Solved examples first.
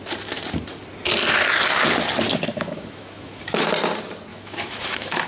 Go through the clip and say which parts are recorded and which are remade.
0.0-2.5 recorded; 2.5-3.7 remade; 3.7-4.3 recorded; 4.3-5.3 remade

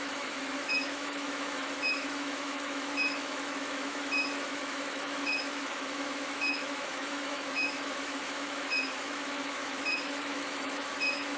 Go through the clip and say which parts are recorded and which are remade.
0.0-11.4 remade

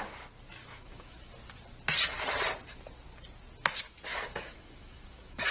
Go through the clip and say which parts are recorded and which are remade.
0.0-0.6 recorded; 0.6-1.3 remade; 1.3-4.1 recorded; 4.1-5.5 remade

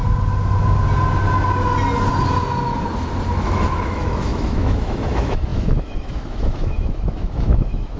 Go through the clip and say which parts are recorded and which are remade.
0.0-3.3 recorded; 3.3-8.0 remade

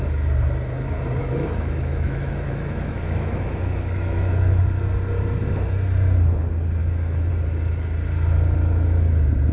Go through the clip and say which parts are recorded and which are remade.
0.0-1.2 recorded; 1.2-4.6 remade; 4.6-6.8 recorded; 6.8-7.3 remade; 7.3-9.5 recorded

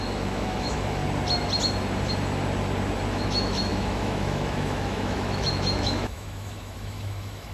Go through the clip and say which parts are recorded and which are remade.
0.0-1.0 remade; 1.0-3.1 recorded; 3.1-7.5 remade

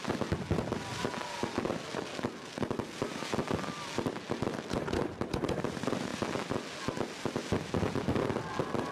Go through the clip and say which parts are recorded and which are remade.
0.0-8.9 recorded

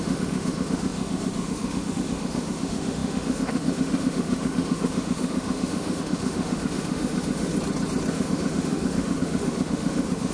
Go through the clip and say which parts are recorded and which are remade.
0.0-7.5 remade; 7.5-8.1 recorded; 8.1-10.3 remade